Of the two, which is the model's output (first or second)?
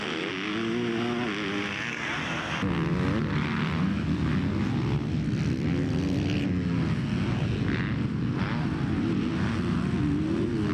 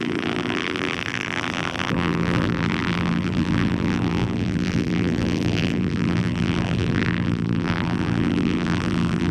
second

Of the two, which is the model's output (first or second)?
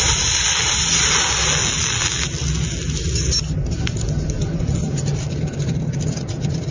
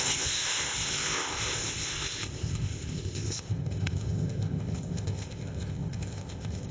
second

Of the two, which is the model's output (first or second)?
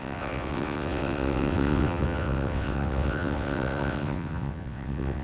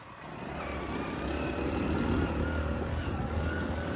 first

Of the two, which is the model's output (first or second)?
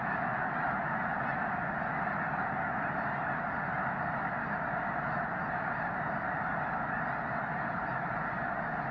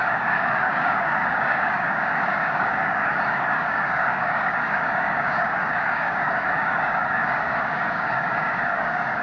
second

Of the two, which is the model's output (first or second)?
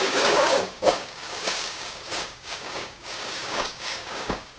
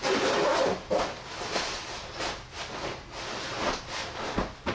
first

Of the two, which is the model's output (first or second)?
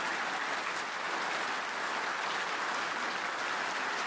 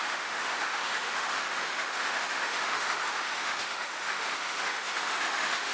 second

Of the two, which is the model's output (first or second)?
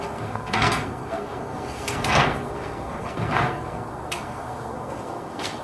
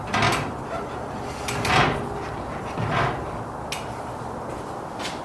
first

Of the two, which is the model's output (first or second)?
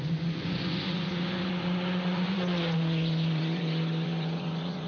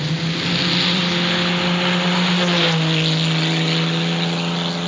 first